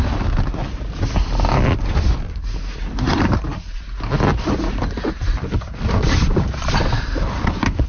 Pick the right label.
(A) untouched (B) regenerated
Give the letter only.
B